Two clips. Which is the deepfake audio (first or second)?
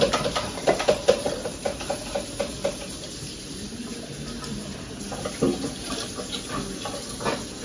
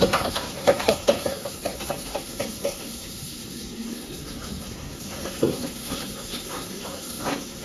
second